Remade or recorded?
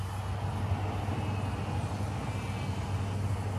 recorded